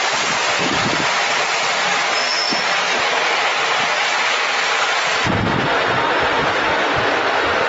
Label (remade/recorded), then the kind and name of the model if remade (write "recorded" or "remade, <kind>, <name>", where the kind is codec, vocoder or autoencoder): recorded